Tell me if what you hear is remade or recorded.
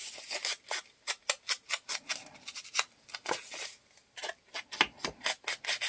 recorded